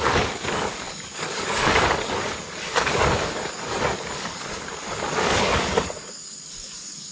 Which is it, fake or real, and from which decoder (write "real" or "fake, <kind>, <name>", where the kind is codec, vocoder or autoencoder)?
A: fake, codec, DAC